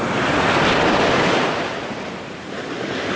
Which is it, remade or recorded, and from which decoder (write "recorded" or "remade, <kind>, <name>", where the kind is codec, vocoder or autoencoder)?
recorded